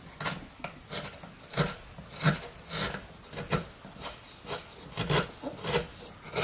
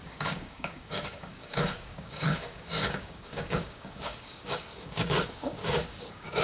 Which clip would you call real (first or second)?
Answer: first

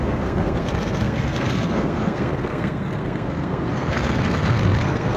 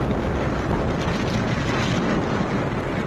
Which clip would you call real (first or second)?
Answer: second